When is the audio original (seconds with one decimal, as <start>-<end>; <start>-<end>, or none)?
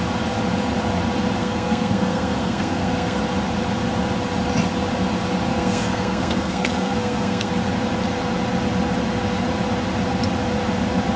0.0-1.4; 3.2-5.5; 7.5-11.2